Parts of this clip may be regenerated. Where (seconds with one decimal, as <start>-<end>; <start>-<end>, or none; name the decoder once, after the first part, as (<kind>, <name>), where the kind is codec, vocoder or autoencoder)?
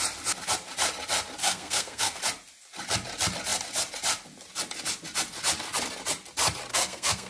1.4-2.2 (codec, SNAC); 6.7-7.3